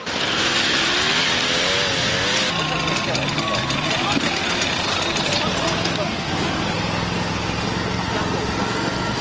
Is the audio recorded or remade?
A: recorded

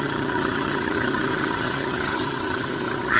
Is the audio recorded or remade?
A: remade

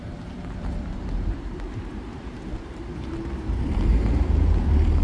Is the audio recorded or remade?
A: remade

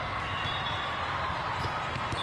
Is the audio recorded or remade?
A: recorded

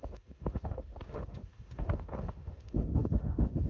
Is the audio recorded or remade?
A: remade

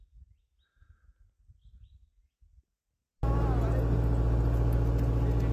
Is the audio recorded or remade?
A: recorded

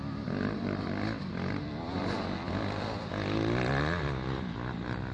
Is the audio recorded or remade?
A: recorded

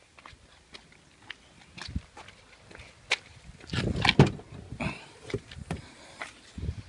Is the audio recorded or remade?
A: recorded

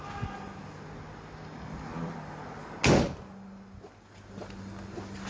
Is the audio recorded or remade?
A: recorded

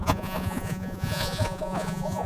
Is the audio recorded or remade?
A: remade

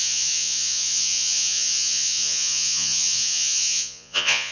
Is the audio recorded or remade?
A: remade